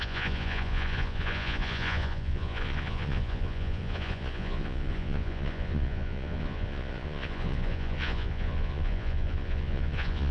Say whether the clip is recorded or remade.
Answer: remade